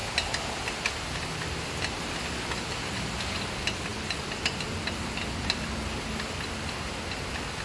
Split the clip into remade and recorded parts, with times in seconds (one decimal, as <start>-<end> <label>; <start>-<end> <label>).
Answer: 0.0-7.6 recorded